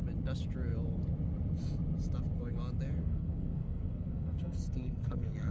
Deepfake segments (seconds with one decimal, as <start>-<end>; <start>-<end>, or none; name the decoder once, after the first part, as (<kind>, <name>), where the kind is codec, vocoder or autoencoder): 3.0-5.5 (codec, SNAC)